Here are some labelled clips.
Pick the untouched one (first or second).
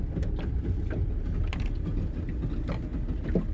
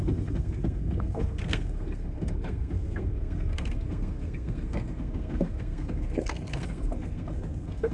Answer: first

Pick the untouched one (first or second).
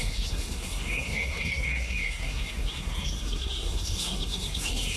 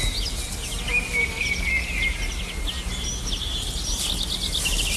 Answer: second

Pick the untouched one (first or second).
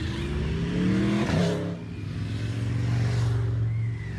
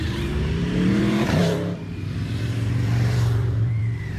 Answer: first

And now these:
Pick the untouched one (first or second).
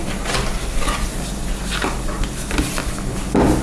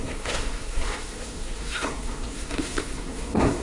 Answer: first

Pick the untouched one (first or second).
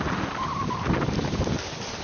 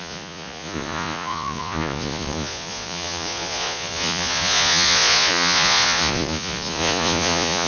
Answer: first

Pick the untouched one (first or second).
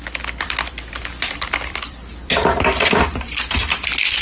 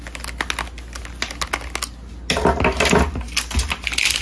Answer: second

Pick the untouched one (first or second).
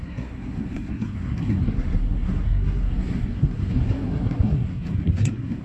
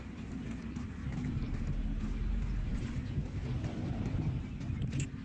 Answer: second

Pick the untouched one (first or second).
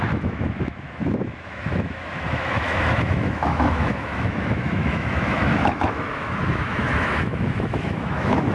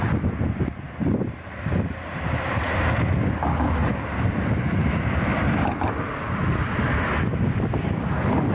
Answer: second